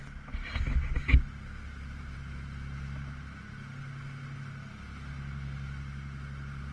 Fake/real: real